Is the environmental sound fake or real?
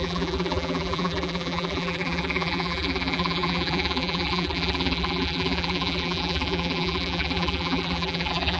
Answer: fake